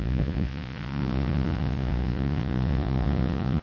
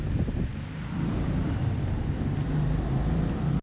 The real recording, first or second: second